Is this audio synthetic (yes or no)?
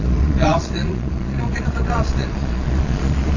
yes